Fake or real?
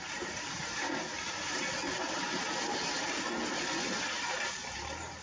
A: real